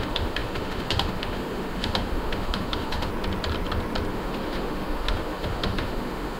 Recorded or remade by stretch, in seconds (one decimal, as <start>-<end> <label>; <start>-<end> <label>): 0.0-3.1 remade; 3.1-4.1 recorded; 4.1-6.4 remade